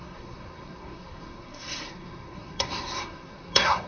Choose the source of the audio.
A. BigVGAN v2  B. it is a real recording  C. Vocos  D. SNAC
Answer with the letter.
D